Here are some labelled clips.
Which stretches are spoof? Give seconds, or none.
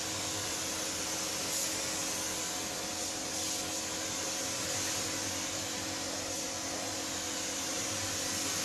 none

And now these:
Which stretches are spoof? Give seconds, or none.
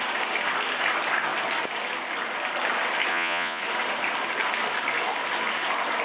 3.1-3.6 (vocoder, Vocos)